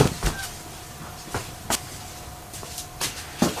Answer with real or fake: fake